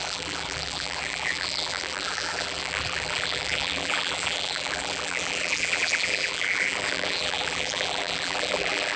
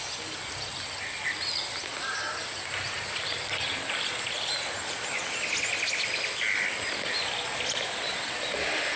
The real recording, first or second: second